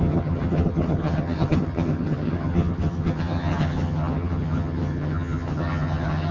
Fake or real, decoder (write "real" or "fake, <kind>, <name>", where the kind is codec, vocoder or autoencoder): fake, vocoder, HiFi-GAN